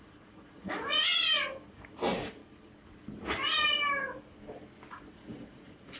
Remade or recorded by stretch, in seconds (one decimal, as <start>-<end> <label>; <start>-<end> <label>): 0.0-1.1 remade; 1.1-1.7 recorded; 1.7-2.4 remade; 2.4-4.9 recorded; 4.9-6.0 remade